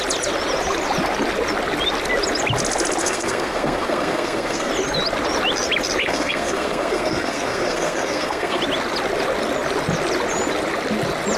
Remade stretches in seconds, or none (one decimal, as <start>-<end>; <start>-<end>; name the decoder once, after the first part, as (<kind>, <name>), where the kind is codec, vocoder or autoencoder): 3.0-4.7 (codec, SNAC); 6.0-8.6